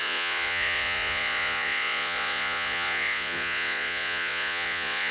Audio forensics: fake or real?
fake